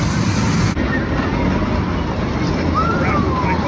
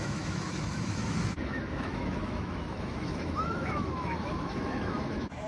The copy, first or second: second